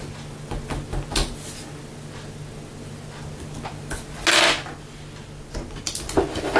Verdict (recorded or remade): recorded